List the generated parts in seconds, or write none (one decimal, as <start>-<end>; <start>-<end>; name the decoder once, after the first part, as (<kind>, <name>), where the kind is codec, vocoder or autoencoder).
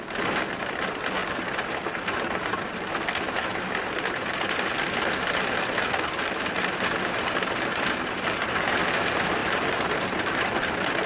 none